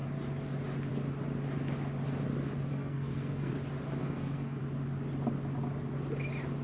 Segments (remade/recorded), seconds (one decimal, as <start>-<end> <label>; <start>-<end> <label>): 0.0-2.7 recorded; 2.7-3.5 remade; 3.5-4.0 recorded; 4.0-4.6 remade; 4.6-6.6 recorded